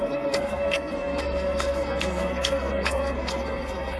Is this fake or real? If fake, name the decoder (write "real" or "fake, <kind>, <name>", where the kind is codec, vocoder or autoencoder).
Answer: fake, codec, SNAC